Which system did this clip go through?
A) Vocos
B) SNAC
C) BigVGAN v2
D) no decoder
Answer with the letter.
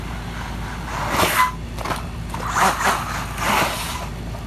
D